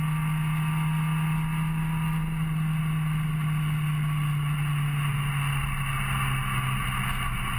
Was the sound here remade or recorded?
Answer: recorded